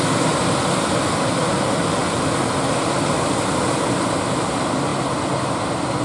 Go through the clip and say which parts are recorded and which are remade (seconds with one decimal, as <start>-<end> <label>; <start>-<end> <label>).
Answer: 0.0-6.0 recorded